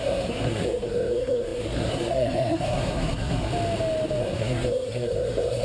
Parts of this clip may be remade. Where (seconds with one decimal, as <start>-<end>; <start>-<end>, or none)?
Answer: 0.0-3.5; 4.2-5.6